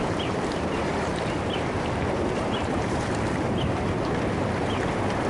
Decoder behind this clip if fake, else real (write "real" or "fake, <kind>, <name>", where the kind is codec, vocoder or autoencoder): fake, vocoder, BigVGAN v2